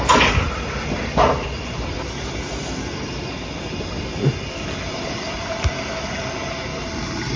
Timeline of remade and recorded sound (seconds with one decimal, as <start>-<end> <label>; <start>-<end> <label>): 0.0-7.4 recorded